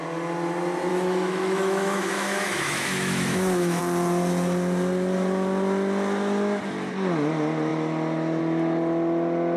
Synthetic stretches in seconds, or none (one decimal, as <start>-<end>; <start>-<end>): 0.9-3.8

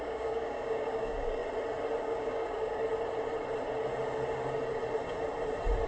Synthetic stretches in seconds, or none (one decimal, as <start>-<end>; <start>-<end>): 0.0-1.4; 2.0-2.8

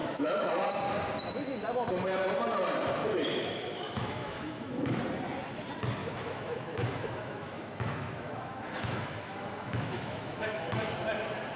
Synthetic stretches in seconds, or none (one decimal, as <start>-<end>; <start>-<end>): 0.0-0.5; 3.0-5.0; 6.0-10.9